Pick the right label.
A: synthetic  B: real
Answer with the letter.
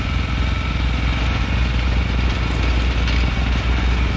B